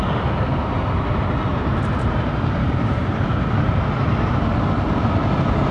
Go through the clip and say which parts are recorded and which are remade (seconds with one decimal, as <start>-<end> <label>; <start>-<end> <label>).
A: 0.0-1.5 recorded; 1.5-3.7 remade; 3.7-5.7 recorded